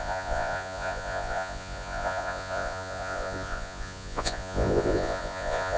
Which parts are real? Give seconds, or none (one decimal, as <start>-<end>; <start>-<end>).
none